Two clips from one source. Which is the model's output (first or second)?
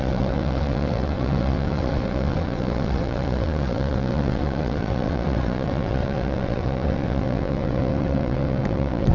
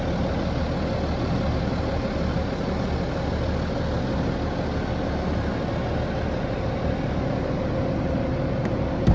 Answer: first